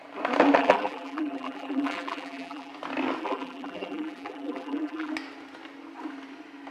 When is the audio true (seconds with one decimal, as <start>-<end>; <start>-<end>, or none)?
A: 0.0-0.6; 2.7-3.2; 5.1-6.7